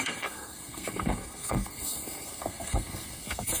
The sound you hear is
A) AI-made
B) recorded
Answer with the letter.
A